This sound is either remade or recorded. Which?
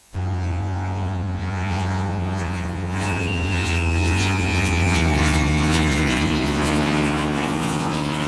remade